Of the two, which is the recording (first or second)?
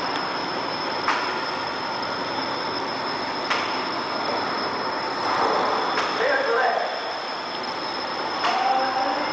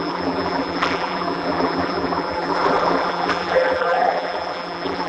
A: first